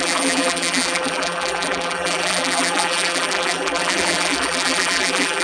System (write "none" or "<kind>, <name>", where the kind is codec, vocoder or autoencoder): vocoder, BigVGAN v2